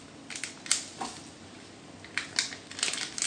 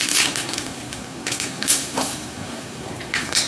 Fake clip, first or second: second